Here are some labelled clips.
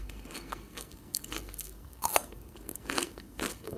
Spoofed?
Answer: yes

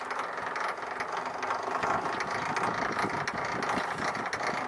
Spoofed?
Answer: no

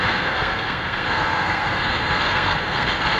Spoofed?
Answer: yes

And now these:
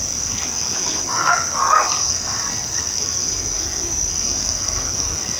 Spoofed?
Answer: yes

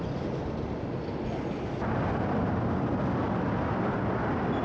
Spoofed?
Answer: no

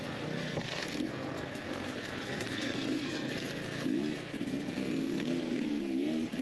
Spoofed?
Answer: yes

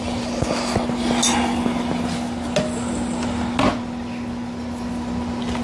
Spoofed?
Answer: no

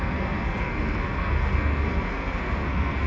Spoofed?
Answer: yes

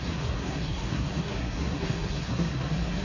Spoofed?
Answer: yes